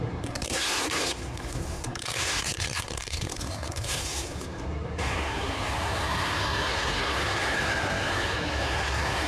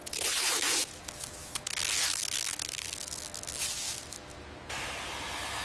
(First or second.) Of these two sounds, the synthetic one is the first